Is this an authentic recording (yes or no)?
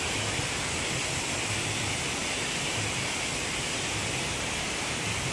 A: yes